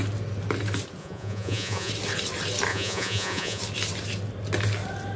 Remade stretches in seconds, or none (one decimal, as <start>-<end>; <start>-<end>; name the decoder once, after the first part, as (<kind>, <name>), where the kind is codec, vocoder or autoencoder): 1.0-1.9 (vocoder, Vocos); 2.7-3.6

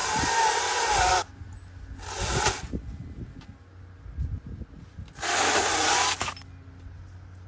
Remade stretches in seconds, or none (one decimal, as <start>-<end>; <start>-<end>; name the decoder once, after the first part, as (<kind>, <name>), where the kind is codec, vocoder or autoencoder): none

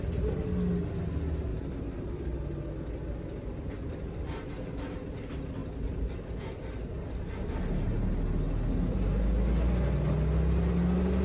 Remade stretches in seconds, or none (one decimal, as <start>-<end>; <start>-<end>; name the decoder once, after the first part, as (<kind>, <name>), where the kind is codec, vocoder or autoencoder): 1.5-2.1 (vocoder, BigVGAN v2)

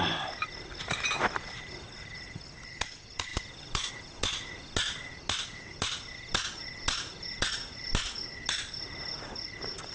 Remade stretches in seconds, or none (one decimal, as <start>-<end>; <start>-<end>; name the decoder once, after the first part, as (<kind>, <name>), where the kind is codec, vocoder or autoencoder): 3.3-3.9 (vocoder, BigVGAN v2)

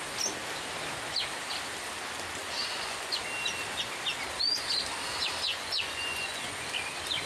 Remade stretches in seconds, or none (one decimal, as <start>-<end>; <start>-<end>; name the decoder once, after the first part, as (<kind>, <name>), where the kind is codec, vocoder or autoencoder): 2.4-3.2 (vocoder, Vocos); 5.5-6.7

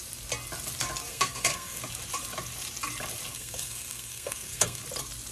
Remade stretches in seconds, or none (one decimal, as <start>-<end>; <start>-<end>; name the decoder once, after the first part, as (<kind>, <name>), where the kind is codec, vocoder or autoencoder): 1.1-1.8 (codec, SNAC); 3.3-4.8